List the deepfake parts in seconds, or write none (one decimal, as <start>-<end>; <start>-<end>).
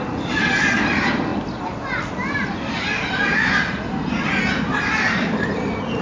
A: none